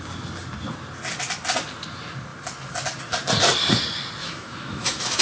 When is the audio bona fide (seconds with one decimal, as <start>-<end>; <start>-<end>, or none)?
0.0-4.2